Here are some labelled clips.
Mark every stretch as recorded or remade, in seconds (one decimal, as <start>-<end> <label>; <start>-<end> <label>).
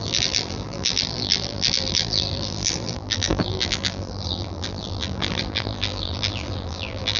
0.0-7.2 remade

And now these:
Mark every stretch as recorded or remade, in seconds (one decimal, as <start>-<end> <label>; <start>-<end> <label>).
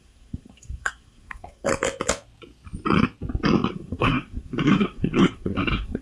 0.0-1.7 remade; 1.7-3.7 recorded; 3.7-6.0 remade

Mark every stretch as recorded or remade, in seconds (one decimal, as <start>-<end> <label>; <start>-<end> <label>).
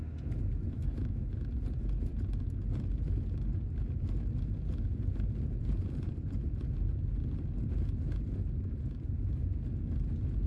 0.0-0.8 recorded; 0.8-1.3 remade; 1.3-10.5 recorded